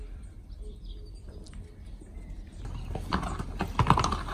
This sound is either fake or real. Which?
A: real